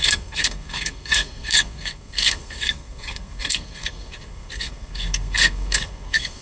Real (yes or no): no